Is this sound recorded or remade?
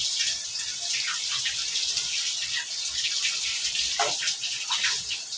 recorded